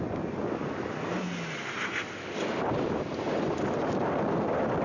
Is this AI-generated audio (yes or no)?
no